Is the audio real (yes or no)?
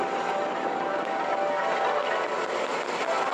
yes